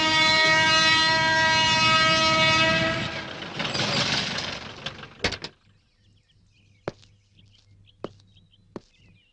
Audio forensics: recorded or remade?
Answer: recorded